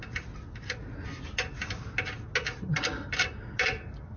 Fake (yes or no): no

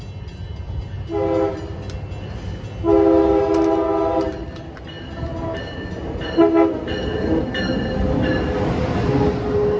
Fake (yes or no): no